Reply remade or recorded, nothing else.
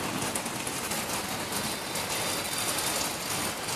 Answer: recorded